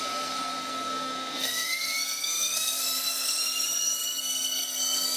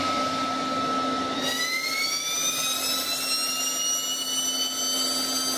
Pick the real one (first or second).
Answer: second